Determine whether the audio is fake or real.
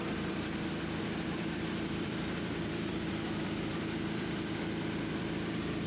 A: fake